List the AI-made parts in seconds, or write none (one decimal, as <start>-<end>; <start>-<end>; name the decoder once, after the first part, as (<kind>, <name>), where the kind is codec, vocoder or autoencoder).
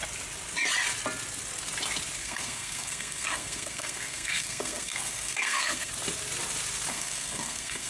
2.2-5.9 (codec, SNAC); 6.9-7.9